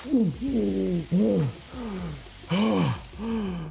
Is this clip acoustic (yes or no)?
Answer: yes